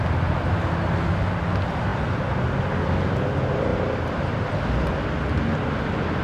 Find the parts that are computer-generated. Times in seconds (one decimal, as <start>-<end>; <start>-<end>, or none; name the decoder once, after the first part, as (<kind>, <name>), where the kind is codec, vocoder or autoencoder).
none